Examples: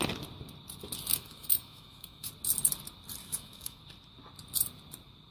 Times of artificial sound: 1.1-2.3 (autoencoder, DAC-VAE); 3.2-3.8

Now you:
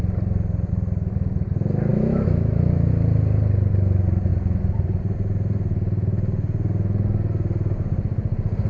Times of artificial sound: 1.9-2.9 (autoencoder, DAC-VAE)